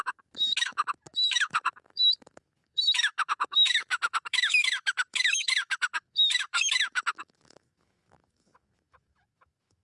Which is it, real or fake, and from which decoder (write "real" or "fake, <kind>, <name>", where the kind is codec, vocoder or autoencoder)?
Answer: fake, autoencoder, DAC-VAE